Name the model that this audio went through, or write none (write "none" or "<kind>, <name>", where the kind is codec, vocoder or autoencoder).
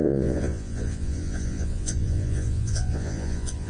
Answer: vocoder, Vocos